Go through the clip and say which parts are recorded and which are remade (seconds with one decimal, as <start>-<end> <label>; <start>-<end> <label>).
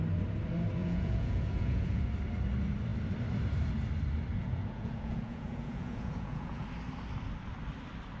0.0-0.8 recorded; 0.8-2.0 remade; 2.0-4.4 recorded; 4.4-6.6 remade; 6.6-8.2 recorded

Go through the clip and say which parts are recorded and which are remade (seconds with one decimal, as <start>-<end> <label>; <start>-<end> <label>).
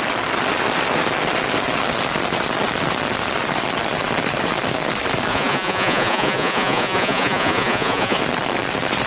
0.0-5.3 recorded; 5.3-8.2 remade; 8.2-9.1 recorded